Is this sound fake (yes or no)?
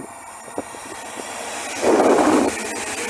no